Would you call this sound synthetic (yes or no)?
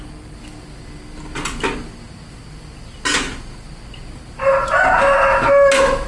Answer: no